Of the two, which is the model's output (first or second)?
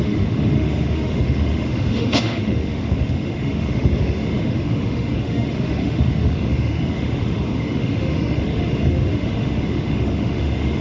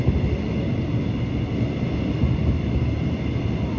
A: first